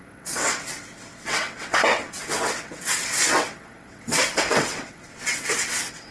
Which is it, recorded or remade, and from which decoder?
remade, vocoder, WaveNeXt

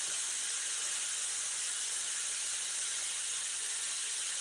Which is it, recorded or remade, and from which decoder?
remade, vocoder, Vocos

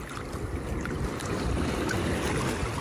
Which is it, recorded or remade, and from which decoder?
recorded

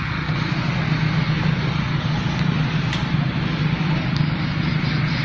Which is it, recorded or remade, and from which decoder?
recorded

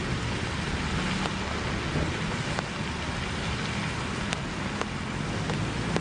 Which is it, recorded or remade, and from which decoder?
recorded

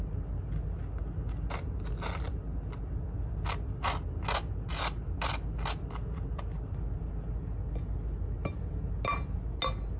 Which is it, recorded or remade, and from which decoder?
recorded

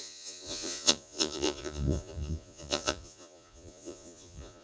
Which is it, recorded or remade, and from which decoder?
remade, vocoder, Vocos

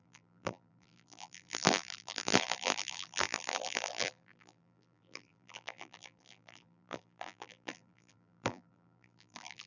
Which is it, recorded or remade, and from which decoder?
remade, vocoder, BigVGAN v2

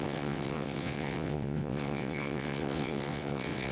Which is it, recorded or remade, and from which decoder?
remade, vocoder, WaveNeXt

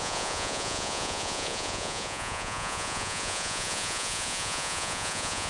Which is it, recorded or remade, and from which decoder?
remade, vocoder, Vocos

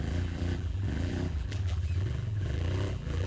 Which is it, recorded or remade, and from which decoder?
remade, vocoder, BigVGAN v2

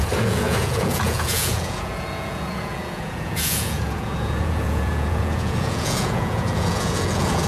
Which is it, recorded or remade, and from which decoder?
remade, vocoder, Vocos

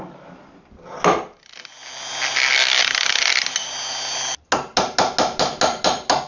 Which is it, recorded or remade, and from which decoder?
recorded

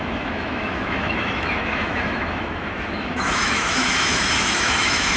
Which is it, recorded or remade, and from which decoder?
remade, autoencoder, DAC-VAE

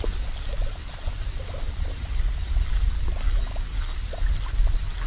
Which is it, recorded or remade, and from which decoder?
recorded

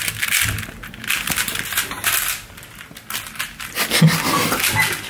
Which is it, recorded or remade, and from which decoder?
recorded